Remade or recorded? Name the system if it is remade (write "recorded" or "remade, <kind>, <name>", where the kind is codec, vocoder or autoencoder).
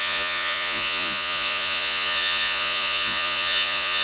remade, vocoder, Vocos